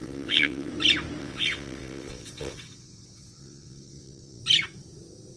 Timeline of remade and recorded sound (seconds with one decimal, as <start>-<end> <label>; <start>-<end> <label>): 0.0-0.7 remade; 0.7-1.2 recorded; 1.2-4.4 remade; 4.4-5.4 recorded